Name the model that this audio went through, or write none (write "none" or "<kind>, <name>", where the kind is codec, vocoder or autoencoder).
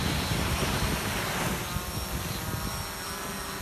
none